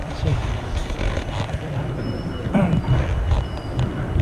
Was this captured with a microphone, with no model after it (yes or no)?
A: no